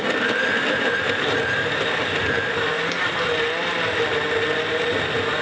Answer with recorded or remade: recorded